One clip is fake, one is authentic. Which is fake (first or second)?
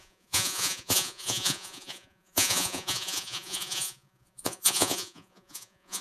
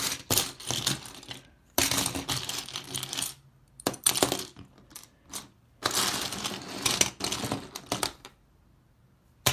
first